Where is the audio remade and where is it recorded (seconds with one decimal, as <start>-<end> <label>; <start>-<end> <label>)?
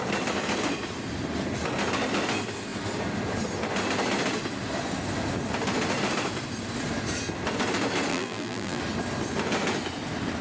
0.0-8.1 recorded; 8.1-8.8 remade; 8.8-10.4 recorded